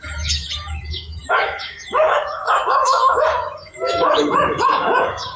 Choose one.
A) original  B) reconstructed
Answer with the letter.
B